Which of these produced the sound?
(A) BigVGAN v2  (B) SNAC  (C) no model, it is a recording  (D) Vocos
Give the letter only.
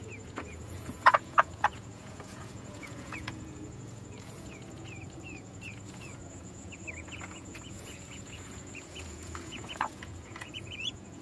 D